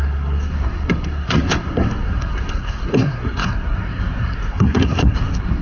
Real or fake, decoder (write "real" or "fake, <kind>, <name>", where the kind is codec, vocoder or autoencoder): fake, codec, SNAC